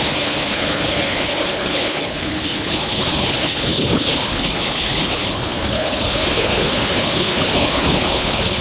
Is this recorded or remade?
remade